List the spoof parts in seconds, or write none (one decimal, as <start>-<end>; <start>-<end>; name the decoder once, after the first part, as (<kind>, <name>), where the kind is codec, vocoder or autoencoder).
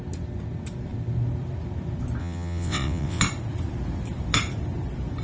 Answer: 2.2-3.2 (vocoder, WaveNeXt)